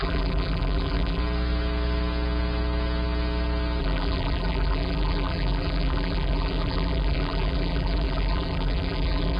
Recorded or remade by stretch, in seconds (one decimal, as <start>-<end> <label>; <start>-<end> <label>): 0.0-1.2 remade; 1.2-3.8 recorded; 3.8-9.4 remade